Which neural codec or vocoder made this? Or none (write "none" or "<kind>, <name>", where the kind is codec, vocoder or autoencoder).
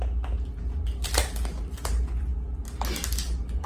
none